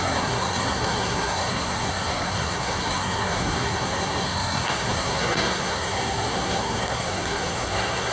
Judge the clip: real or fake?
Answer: fake